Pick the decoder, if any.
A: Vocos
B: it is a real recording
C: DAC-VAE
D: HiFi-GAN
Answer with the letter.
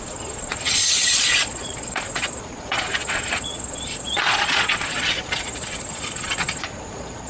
A